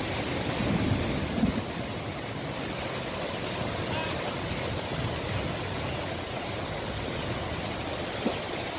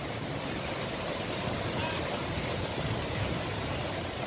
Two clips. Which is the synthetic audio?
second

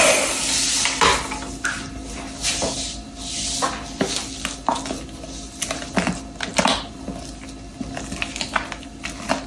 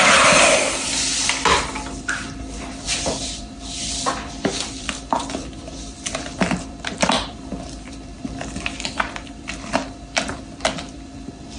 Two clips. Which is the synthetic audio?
second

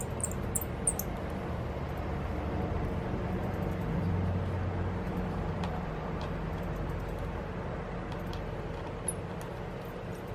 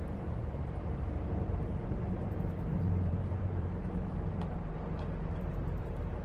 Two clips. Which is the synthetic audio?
second